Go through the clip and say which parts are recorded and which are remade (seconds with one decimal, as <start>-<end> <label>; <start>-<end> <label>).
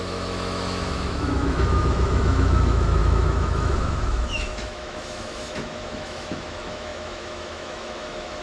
0.0-8.4 remade